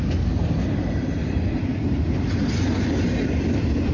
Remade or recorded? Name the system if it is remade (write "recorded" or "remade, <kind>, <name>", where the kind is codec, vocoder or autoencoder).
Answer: recorded